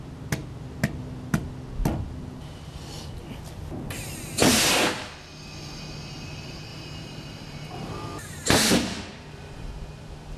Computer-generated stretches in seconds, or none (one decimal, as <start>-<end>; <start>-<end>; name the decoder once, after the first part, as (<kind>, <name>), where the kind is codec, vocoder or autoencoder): 6.7-9.7 (vocoder, BigVGAN v2)